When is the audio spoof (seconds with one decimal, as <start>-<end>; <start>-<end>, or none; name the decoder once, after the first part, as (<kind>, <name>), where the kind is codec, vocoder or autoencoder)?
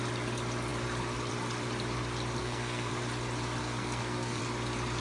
2.4-2.9 (codec, SNAC); 3.6-4.4